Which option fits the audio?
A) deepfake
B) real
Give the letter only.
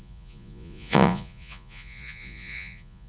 A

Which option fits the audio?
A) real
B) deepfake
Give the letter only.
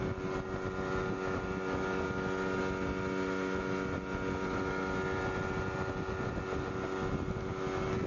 A